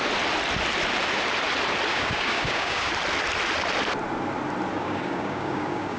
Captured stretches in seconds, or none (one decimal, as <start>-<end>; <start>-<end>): 0.0-1.9; 2.9-4.7